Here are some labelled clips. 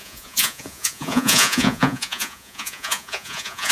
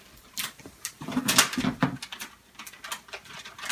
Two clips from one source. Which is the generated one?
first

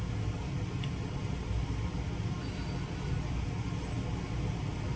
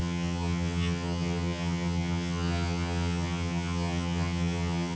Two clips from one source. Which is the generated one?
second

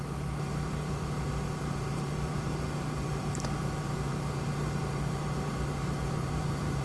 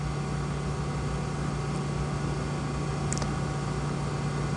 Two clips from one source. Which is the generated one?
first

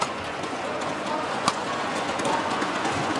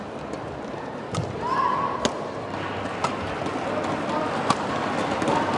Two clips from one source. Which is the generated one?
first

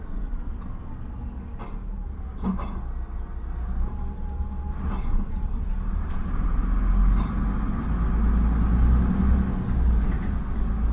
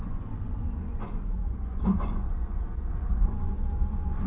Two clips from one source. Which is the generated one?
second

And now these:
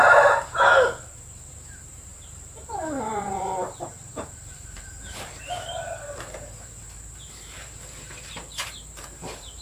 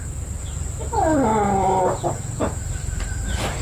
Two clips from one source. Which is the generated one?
first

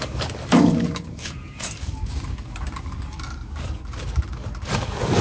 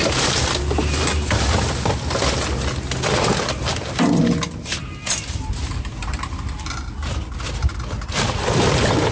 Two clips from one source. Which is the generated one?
first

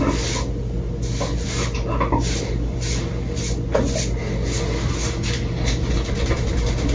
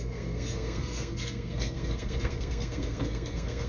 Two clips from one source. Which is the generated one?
second